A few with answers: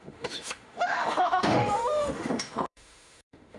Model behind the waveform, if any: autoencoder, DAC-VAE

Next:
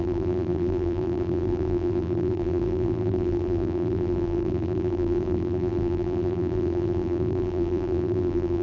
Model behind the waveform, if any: vocoder, BigVGAN v2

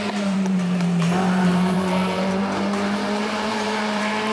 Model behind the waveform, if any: vocoder, BigVGAN v2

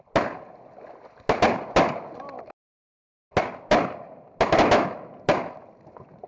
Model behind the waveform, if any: none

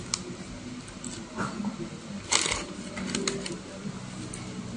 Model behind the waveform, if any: none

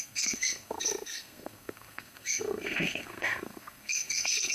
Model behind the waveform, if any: codec, SNAC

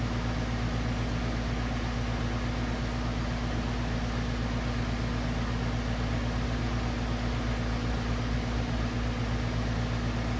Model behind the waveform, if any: none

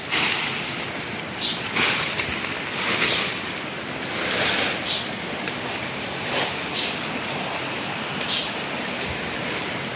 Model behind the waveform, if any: none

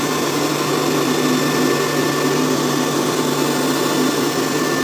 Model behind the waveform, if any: none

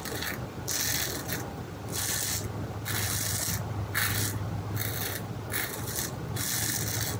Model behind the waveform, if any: none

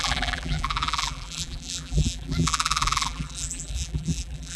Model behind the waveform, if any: vocoder, BigVGAN v2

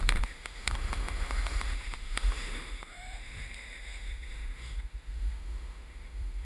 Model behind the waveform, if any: autoencoder, DAC-VAE